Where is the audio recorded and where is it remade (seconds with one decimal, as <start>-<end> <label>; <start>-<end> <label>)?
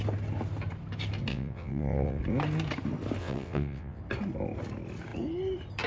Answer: 0.0-1.3 recorded; 1.3-2.2 remade; 2.2-3.2 recorded; 3.2-4.0 remade; 4.0-5.9 recorded